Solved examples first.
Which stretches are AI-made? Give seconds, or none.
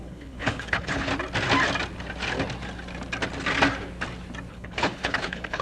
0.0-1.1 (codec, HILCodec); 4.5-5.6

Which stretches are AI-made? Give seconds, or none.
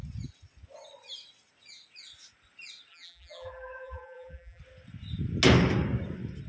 2.9-4.6 (vocoder, BigVGAN v2)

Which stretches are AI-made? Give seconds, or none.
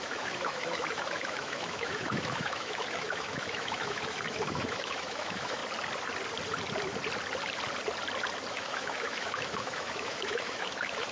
0.0-5.6 (autoencoder, DAC-VAE); 8.5-11.1